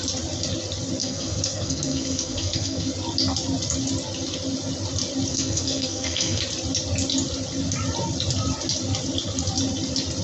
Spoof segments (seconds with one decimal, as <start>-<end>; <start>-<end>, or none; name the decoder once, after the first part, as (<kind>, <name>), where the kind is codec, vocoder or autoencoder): 1.0-2.9 (codec, SNAC); 5.3-6.4